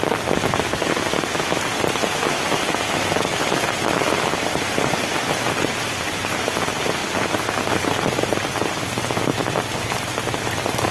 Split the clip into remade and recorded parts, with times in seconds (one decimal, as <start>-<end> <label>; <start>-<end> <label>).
0.0-10.9 recorded